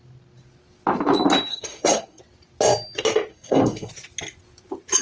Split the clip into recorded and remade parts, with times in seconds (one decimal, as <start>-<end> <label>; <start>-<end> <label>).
0.0-1.5 recorded; 1.5-2.2 remade; 2.2-3.3 recorded; 3.3-3.9 remade; 3.9-5.0 recorded